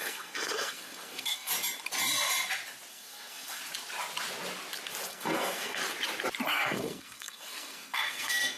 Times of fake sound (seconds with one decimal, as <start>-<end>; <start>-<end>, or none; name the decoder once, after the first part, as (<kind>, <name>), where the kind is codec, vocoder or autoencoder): 0.0-1.5 (codec, SNAC); 2.9-3.6; 5.1-5.8; 6.5-8.6